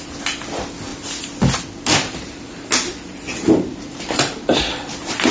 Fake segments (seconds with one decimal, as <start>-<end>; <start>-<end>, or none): none